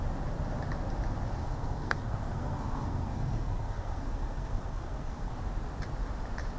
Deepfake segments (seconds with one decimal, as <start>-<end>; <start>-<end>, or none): 1.4-5.3